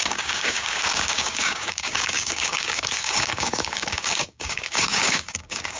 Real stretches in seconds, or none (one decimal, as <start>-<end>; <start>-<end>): none